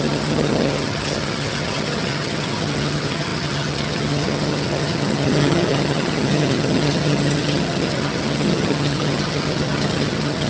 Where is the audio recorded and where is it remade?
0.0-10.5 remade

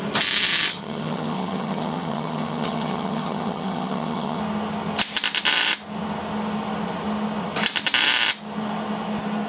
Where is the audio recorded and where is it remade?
0.0-0.7 recorded; 0.7-4.4 remade; 4.4-9.5 recorded

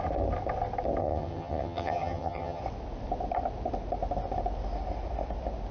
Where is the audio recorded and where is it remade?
0.0-1.0 recorded; 1.0-2.6 remade; 2.6-5.7 recorded

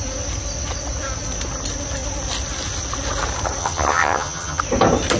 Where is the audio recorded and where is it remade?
0.0-3.6 recorded; 3.6-4.6 remade; 4.6-5.2 recorded

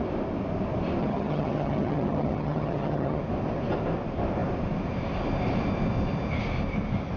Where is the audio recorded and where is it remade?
0.0-1.0 recorded; 1.0-3.2 remade; 3.2-7.2 recorded

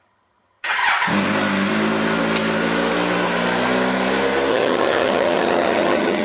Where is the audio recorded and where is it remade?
0.0-0.8 remade; 0.8-4.5 recorded; 4.5-6.2 remade

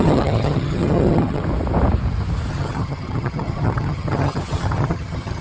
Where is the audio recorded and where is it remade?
0.0-1.4 remade; 1.4-2.5 recorded; 2.5-5.4 remade

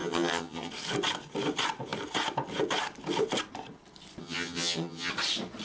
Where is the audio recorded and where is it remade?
0.0-0.7 remade; 0.7-4.2 recorded; 4.2-5.1 remade; 5.1-5.6 recorded